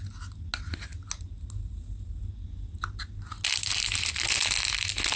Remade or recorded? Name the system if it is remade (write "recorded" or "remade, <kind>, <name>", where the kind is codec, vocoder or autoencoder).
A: recorded